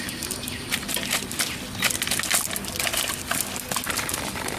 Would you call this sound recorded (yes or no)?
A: yes